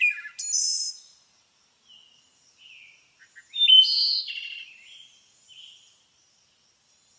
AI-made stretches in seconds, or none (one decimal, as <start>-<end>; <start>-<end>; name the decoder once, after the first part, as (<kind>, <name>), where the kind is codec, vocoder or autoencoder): none